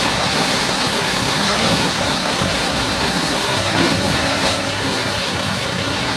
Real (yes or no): no